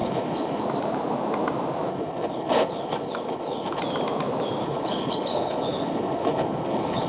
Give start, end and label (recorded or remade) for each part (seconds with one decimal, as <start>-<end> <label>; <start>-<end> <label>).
0.0-0.6 remade; 0.6-1.9 recorded; 1.9-3.8 remade; 3.8-4.6 recorded; 4.6-7.1 remade